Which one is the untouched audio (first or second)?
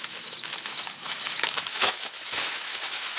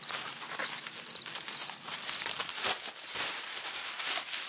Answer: second